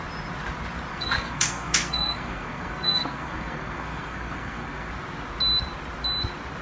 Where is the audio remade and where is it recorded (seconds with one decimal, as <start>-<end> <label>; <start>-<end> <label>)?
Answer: 0.0-0.9 recorded; 0.9-4.9 remade; 4.9-6.6 recorded